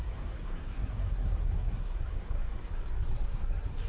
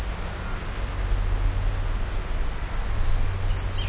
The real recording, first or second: second